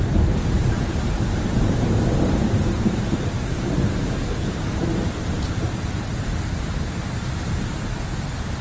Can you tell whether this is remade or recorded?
remade